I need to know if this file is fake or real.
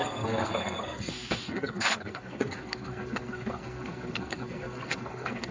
fake